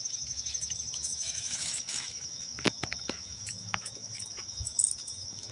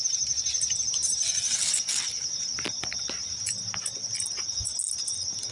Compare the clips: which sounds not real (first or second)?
first